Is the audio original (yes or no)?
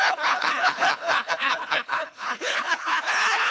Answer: no